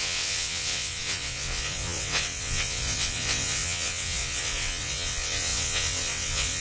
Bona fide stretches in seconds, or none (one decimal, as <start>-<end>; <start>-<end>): none